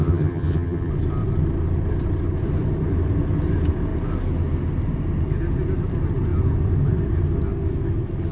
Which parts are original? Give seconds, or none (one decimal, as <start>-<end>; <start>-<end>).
0.9-8.3